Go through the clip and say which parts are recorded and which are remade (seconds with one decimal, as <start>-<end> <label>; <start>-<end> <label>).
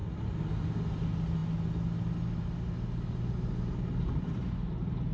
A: 0.0-5.1 recorded